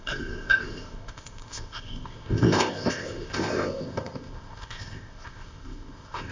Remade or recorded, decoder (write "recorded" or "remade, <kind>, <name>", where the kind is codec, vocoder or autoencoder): remade, codec, ZipCodec